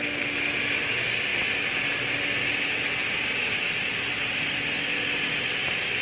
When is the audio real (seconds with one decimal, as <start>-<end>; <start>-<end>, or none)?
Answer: 0.0-6.0